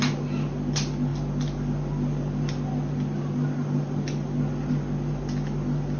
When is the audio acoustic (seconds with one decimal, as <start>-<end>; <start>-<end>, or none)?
0.0-6.0